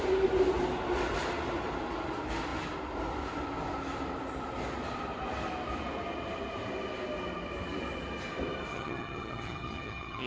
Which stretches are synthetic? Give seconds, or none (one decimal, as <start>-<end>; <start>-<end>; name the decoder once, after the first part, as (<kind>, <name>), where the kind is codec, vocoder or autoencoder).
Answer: 8.7-10.3 (vocoder, HiFi-GAN)